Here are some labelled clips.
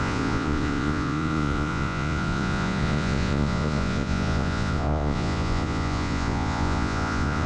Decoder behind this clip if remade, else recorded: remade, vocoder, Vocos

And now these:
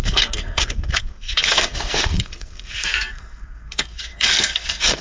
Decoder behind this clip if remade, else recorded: remade, codec, SNAC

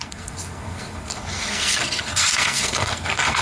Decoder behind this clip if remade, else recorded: remade, codec, SNAC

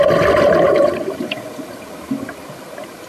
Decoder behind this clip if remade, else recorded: recorded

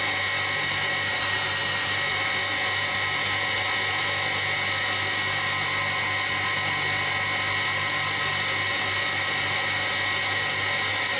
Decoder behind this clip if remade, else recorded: recorded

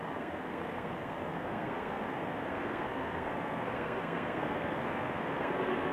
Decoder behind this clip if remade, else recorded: remade, codec, SNAC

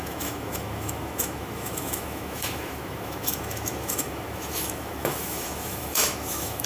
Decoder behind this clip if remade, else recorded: remade, autoencoder, DAC-VAE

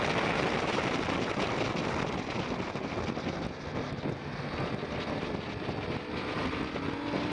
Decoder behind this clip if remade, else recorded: recorded